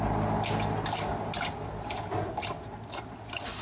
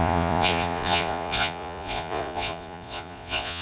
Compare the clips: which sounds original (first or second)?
first